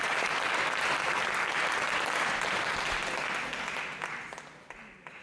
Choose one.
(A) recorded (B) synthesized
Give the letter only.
A